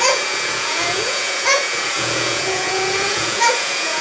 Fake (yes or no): yes